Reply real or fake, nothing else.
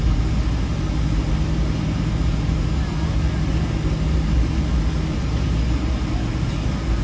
real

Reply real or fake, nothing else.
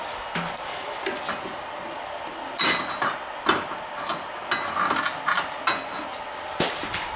real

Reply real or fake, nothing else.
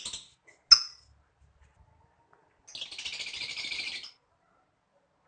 real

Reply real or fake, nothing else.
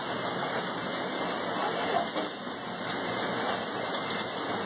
real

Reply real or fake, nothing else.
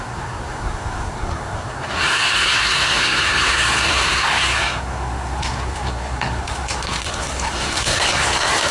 fake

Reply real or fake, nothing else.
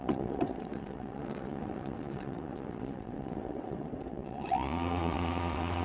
fake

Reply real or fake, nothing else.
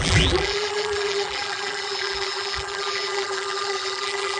fake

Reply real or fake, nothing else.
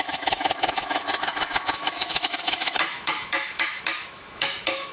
fake